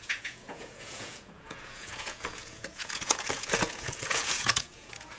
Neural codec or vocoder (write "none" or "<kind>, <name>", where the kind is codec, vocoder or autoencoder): vocoder, Vocos